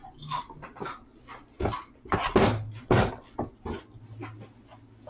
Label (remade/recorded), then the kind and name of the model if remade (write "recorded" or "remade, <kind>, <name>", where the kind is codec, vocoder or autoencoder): recorded